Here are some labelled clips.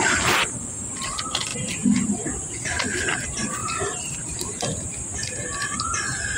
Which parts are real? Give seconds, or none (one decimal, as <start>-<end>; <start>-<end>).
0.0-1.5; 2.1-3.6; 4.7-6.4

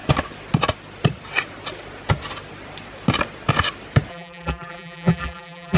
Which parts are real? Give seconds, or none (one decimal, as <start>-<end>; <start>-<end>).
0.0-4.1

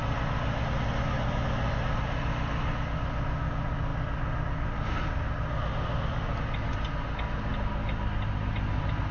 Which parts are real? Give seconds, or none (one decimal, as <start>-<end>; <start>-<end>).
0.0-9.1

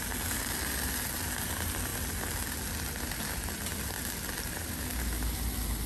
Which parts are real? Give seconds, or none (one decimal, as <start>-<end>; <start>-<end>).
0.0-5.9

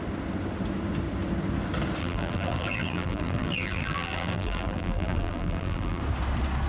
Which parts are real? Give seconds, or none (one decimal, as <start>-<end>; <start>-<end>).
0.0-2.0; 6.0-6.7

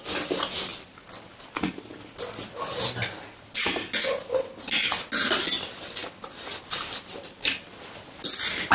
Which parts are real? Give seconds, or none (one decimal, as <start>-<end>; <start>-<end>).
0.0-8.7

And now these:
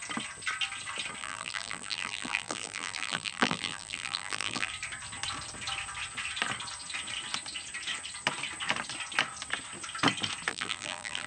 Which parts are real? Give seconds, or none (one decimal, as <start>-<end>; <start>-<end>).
0.0-1.2; 4.7-10.5

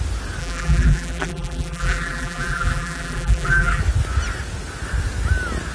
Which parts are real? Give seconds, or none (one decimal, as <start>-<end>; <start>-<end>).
0.0-0.4; 3.8-5.7